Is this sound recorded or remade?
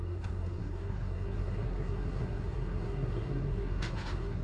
remade